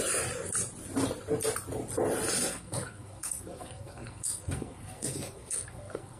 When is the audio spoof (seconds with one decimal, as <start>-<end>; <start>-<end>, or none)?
2.5-6.2